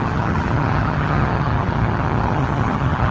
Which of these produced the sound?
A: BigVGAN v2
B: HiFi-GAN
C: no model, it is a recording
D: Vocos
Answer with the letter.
B